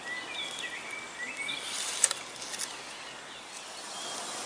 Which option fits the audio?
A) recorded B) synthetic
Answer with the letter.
A